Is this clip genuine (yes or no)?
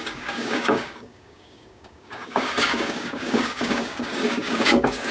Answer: no